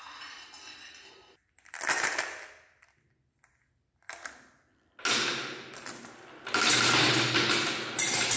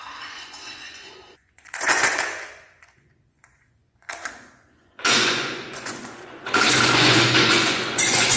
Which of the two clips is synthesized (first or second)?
second